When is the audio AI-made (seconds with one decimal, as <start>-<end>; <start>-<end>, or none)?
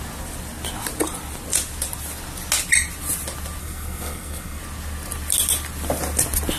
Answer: 3.6-4.6